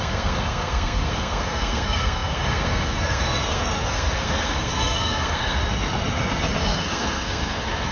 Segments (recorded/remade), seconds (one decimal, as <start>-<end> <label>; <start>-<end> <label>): 0.0-5.6 remade; 5.6-6.6 recorded; 6.6-7.9 remade

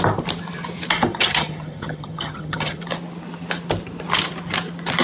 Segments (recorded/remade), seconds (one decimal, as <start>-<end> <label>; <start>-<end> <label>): 0.0-1.1 recorded; 1.1-2.8 remade; 2.8-5.0 recorded

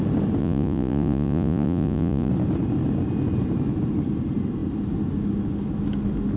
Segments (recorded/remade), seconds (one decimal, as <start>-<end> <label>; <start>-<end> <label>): 0.0-0.4 recorded; 0.4-2.3 remade; 2.3-6.4 recorded